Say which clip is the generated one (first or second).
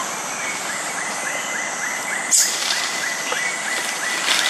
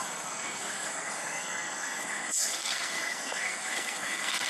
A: second